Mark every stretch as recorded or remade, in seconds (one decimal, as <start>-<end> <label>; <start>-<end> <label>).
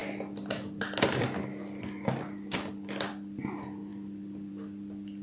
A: 0.0-5.2 recorded